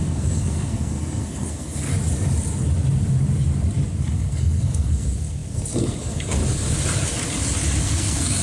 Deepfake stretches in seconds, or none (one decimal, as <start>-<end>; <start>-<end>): 0.0-1.9; 4.0-6.4; 7.8-8.4

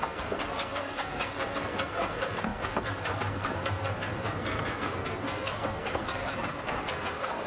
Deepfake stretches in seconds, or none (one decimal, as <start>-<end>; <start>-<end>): 0.0-7.5

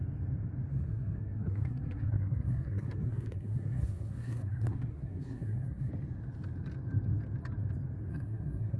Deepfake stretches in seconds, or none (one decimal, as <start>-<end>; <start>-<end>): 0.7-5.9; 8.1-8.8

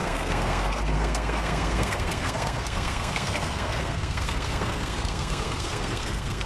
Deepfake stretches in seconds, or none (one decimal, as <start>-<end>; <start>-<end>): 0.0-6.5

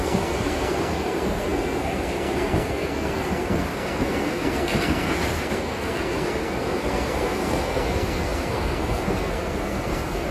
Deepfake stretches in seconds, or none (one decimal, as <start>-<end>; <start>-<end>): 0.0-10.3

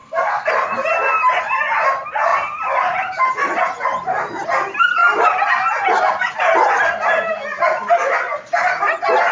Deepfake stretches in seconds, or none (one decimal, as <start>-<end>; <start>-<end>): 0.0-0.5

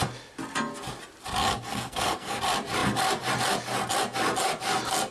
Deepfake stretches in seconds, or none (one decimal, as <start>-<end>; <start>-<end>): 1.7-2.4